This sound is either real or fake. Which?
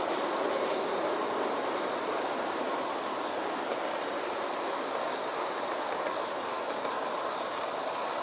real